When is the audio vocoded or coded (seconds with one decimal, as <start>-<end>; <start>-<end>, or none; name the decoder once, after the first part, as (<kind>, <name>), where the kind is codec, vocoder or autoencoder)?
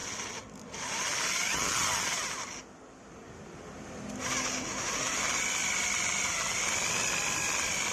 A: none